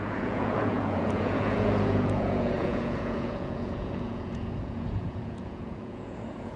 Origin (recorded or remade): remade